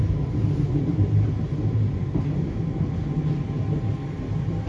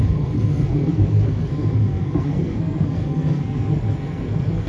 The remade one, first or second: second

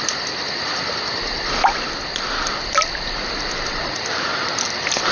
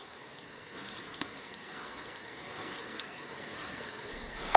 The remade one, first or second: second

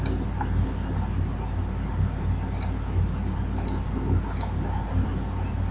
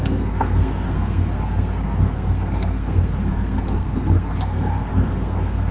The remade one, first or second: second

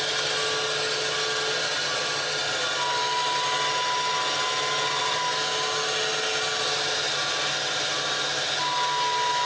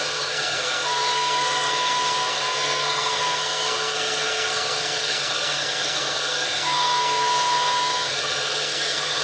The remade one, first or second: second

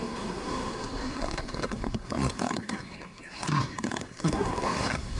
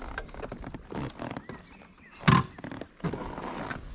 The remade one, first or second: first